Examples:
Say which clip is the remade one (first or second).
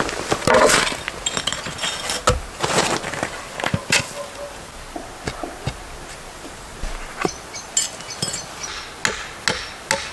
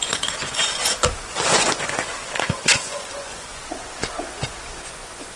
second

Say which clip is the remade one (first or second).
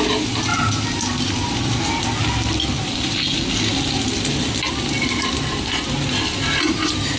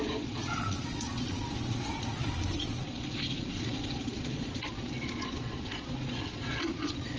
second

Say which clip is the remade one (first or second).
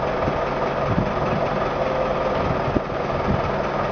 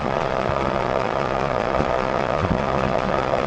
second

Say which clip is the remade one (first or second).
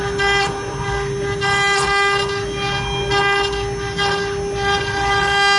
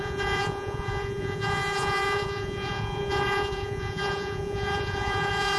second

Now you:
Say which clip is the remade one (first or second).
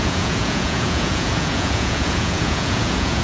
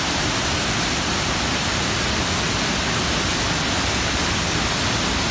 first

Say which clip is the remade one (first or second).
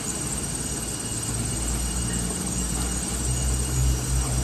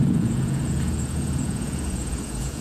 second